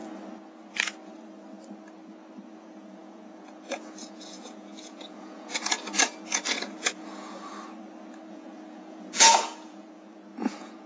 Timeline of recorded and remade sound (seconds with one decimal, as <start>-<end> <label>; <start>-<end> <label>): 0.0-2.5 recorded; 2.5-7.4 remade; 7.4-8.3 recorded; 8.3-10.9 remade